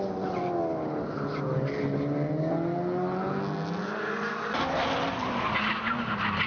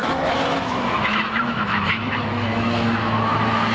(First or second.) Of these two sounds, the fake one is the second